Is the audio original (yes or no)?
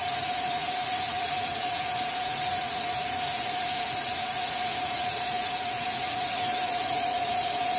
no